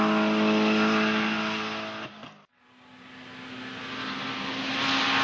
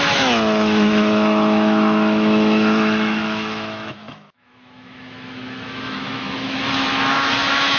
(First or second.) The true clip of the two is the first